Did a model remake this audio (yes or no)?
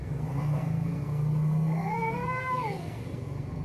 yes